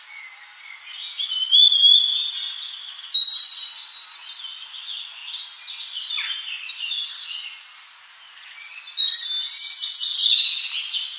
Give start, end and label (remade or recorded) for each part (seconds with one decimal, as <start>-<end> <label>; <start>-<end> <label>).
0.0-11.2 recorded